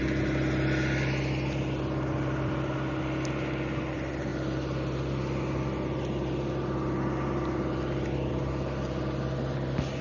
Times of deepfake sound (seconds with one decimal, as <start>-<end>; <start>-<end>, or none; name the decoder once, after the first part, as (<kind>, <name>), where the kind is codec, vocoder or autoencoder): none